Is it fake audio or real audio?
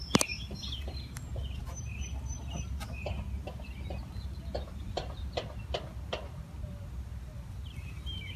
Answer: real